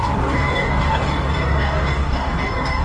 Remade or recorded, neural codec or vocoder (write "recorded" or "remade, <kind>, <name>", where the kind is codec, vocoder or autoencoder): remade, codec, DAC